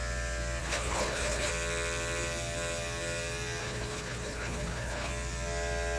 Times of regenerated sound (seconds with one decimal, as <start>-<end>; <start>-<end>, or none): 0.6-1.5; 3.6-5.1